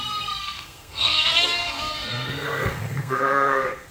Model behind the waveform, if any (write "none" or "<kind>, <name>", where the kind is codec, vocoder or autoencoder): codec, SNAC